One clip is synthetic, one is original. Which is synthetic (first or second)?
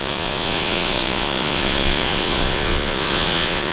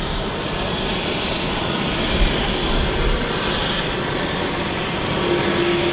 first